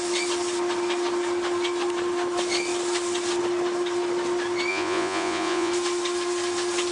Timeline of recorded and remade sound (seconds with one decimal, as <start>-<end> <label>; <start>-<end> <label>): 0.0-4.7 recorded; 4.7-5.7 remade; 5.7-6.9 recorded